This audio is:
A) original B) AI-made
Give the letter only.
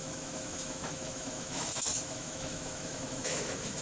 B